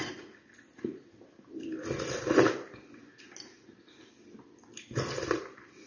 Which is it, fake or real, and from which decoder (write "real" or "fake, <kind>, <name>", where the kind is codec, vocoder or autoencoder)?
real